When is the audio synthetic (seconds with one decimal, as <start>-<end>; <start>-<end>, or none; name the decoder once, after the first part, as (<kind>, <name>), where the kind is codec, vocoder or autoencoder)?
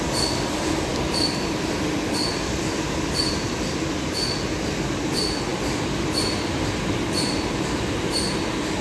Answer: 2.7-3.3 (vocoder, BigVGAN v2); 5.5-8.1